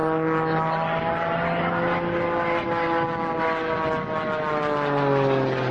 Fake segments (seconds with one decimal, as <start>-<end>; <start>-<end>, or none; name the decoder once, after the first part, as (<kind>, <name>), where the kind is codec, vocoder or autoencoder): none